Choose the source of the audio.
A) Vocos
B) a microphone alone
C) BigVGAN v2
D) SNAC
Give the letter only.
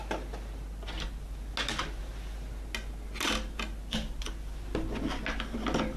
B